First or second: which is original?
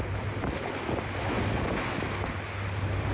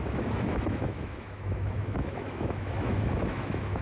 first